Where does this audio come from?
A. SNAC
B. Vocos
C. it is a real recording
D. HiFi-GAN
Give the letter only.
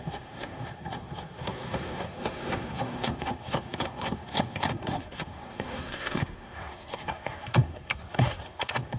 A